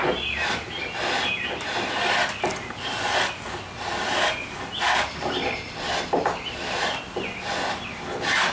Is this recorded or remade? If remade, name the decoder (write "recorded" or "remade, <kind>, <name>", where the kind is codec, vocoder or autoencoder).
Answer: recorded